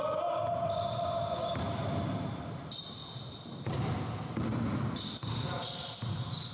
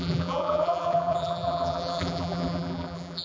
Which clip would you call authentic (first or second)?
first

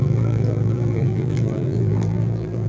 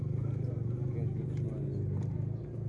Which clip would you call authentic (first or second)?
second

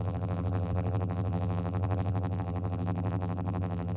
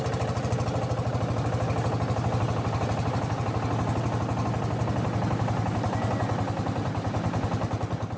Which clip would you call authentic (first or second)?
second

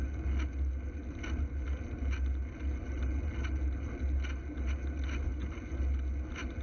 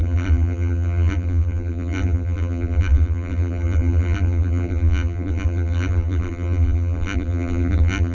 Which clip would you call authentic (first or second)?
first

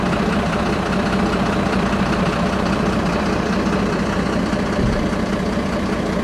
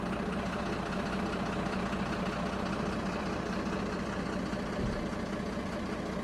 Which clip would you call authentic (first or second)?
second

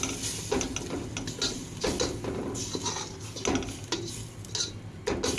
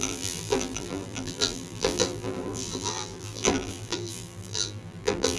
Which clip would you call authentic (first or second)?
first